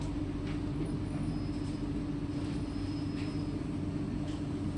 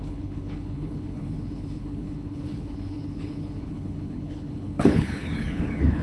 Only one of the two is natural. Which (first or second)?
first